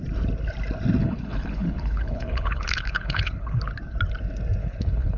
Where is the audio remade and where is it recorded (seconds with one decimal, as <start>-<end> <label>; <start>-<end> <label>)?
0.0-1.0 recorded; 1.0-3.6 remade; 3.6-4.6 recorded; 4.6-5.2 remade